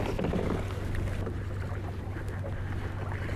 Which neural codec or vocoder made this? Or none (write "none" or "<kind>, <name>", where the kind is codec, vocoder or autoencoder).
none